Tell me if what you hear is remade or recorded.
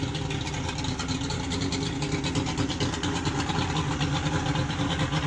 recorded